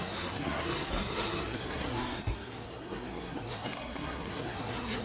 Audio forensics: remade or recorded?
remade